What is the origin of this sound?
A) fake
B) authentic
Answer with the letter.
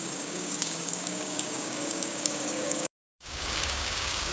A